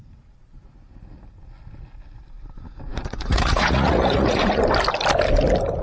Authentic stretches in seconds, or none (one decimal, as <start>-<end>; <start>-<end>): 0.0-2.9; 4.6-5.8